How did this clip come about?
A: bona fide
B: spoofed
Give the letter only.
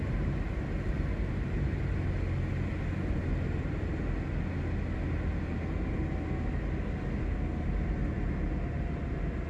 A